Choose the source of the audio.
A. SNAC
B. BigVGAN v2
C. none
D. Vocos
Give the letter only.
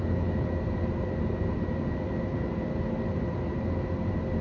B